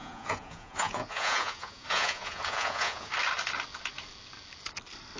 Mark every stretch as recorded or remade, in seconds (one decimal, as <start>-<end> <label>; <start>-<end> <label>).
0.0-3.1 remade; 3.1-5.2 recorded